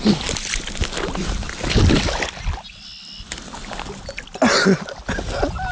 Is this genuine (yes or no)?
yes